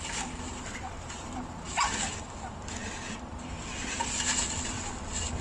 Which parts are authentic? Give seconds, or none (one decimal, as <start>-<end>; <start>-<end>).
0.0-5.4